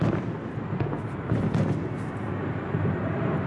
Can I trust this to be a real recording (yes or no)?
yes